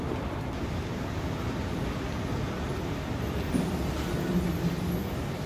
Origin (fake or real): real